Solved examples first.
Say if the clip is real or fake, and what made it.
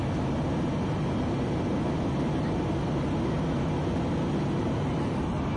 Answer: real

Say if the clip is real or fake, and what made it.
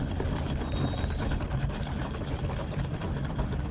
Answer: real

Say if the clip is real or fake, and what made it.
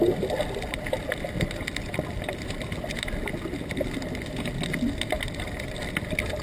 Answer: real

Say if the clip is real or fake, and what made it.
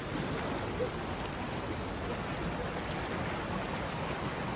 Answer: real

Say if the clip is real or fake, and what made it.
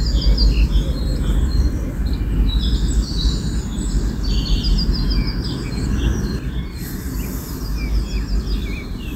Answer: real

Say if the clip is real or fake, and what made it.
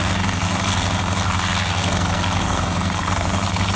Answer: fake, codec, SNAC